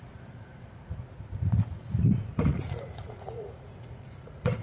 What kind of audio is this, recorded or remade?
remade